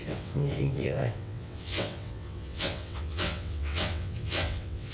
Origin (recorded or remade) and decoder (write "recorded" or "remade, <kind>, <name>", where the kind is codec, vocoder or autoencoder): remade, vocoder, WaveNeXt